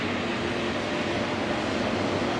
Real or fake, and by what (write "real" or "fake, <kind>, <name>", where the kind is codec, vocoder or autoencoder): real